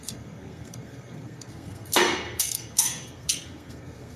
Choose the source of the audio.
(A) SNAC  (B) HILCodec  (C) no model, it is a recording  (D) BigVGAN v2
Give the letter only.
A